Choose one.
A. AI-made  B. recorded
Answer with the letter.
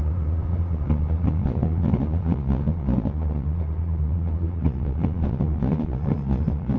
A